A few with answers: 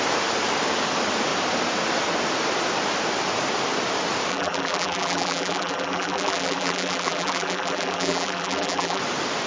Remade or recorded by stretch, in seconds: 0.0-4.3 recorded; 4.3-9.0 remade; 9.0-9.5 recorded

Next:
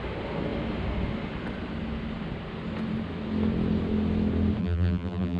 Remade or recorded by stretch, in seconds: 0.0-4.6 recorded; 4.6-5.4 remade

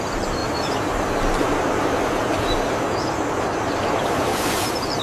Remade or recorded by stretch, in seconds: 0.0-0.4 remade; 0.4-3.4 recorded; 3.4-4.3 remade; 4.3-5.0 recorded

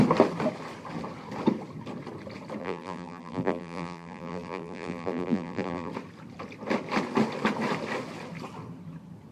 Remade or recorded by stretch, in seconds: 0.0-2.6 recorded; 2.6-5.9 remade; 5.9-9.3 recorded

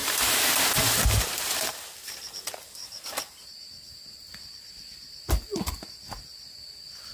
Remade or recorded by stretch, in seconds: 0.0-7.1 recorded

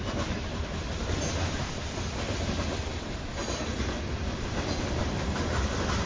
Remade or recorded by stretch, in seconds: 0.0-0.5 remade; 0.5-1.3 recorded; 1.3-5.0 remade; 5.0-5.6 recorded; 5.6-6.1 remade

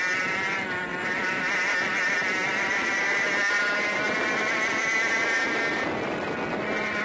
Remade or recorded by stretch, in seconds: 0.0-2.4 recorded; 2.4-5.9 remade; 5.9-7.0 recorded